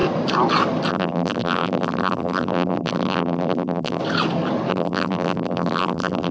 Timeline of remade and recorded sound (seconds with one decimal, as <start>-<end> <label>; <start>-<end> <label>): 0.0-0.9 recorded; 0.9-4.0 remade; 4.0-4.7 recorded; 4.7-6.3 remade